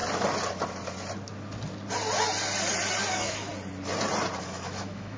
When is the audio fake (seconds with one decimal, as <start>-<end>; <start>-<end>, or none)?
3.1-3.5; 4.4-5.2